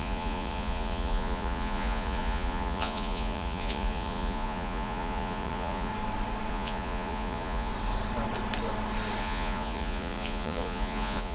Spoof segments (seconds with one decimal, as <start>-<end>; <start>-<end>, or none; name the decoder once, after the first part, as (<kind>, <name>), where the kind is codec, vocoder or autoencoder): 0.0-5.9 (vocoder, Vocos); 6.5-7.7; 9.2-11.3